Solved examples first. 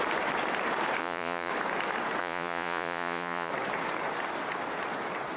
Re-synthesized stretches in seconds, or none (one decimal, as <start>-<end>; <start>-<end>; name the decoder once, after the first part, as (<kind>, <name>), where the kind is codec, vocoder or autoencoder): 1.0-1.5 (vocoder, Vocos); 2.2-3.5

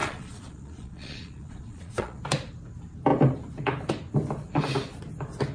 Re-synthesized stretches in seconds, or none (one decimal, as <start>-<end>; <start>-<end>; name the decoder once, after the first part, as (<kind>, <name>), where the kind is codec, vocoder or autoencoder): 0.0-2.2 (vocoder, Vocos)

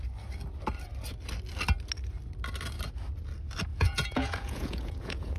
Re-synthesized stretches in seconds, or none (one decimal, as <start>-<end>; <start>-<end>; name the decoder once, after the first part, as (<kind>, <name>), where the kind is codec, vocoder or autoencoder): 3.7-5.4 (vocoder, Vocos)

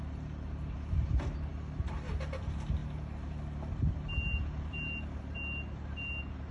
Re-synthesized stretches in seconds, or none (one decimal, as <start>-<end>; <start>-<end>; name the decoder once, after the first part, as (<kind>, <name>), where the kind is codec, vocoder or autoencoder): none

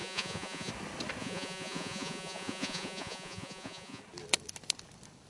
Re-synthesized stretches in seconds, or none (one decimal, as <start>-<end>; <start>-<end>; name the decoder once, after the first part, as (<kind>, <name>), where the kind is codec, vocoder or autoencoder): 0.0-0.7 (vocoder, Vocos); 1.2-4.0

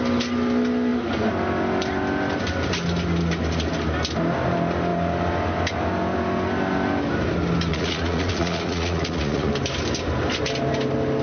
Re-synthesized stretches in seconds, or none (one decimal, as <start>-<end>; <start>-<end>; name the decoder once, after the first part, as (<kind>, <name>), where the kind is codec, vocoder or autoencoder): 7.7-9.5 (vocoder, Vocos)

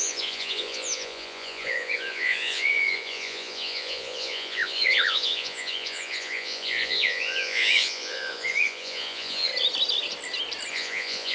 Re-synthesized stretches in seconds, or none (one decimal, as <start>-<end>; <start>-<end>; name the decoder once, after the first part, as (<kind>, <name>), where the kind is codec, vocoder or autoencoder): 0.0-9.5 (vocoder, Vocos); 10.7-11.3

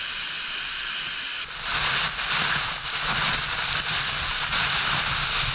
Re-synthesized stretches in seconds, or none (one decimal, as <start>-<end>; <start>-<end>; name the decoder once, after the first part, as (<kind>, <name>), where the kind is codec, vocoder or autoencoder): none